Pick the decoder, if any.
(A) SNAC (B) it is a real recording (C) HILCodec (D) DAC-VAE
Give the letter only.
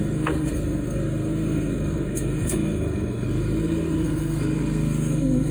A